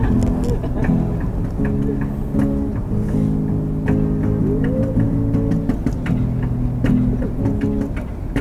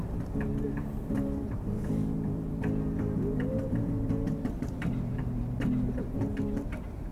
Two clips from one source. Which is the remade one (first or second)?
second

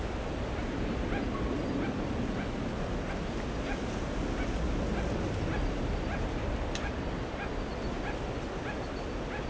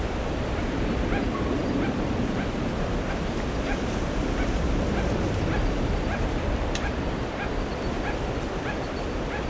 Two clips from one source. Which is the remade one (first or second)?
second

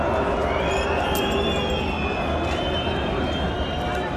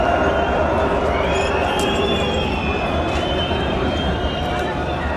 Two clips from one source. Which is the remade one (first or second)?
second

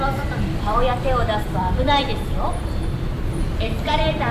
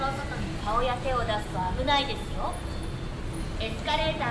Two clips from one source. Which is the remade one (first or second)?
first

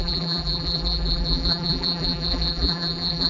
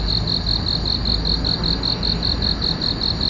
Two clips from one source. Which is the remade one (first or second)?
first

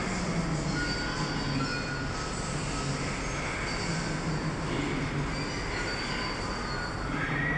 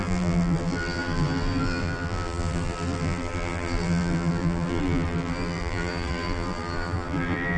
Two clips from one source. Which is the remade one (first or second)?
second